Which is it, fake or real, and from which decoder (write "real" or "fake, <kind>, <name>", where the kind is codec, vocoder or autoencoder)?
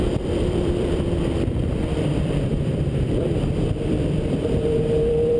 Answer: fake, vocoder, BigVGAN v2